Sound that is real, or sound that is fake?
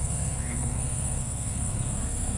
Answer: fake